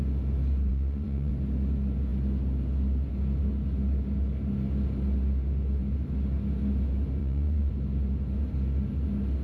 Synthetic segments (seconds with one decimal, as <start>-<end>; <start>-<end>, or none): 0.7-1.3; 7.2-7.7